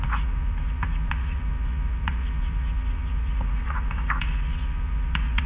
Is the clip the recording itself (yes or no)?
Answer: no